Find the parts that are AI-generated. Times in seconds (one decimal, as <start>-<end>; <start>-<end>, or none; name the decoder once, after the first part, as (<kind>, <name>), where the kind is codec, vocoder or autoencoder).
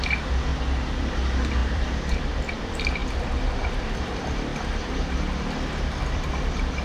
0.0-0.5 (vocoder, BigVGAN v2); 1.0-4.5; 5.8-6.8